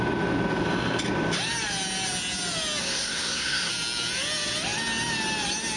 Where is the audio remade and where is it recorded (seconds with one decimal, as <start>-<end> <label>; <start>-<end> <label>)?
0.0-2.8 recorded; 2.8-3.7 remade; 3.7-5.8 recorded